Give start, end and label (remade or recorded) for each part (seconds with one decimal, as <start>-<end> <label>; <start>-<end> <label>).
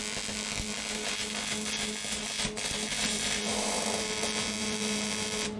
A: 0.0-3.0 recorded; 3.0-5.6 remade